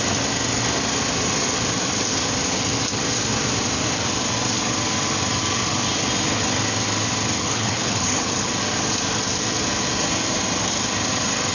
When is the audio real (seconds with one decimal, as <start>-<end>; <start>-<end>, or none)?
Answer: 0.0-7.4; 8.5-11.5